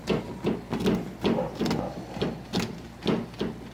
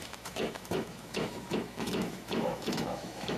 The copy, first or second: second